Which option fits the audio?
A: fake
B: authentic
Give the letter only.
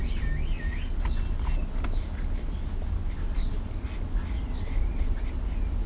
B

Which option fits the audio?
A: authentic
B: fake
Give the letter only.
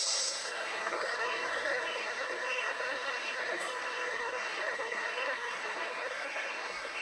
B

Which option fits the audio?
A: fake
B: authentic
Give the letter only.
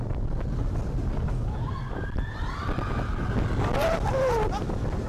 B